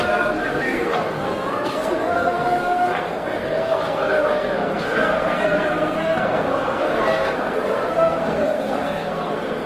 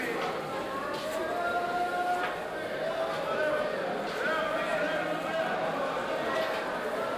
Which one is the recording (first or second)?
second